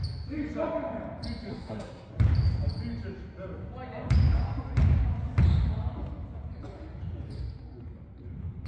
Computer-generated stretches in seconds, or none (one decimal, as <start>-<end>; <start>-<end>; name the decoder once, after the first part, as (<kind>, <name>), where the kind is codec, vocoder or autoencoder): 1.5-2.1 (codec, SNAC)